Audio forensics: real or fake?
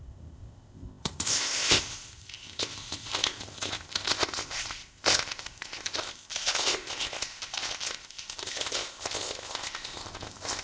fake